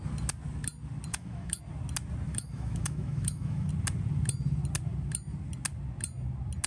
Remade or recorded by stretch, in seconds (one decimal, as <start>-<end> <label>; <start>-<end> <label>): 0.0-1.1 recorded; 1.1-1.6 remade; 1.6-2.3 recorded; 2.3-3.7 remade; 3.7-6.7 recorded